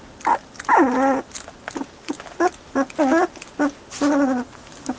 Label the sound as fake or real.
real